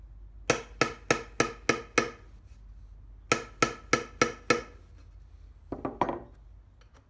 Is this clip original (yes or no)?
yes